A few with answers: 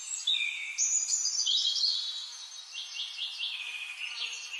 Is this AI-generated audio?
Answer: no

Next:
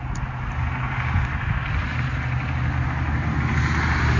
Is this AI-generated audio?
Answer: no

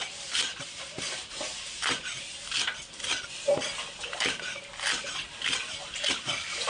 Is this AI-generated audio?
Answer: no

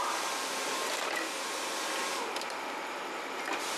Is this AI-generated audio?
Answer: no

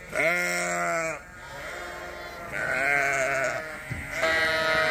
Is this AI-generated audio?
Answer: no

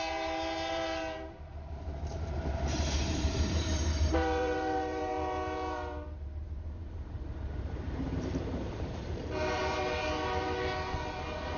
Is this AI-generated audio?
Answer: yes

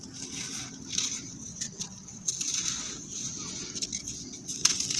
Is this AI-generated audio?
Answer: no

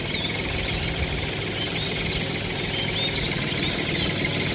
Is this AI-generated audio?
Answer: no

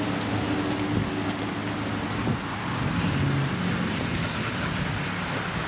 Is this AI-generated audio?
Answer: no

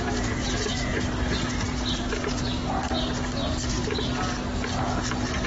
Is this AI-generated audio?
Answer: no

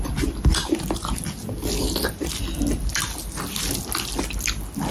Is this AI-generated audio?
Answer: no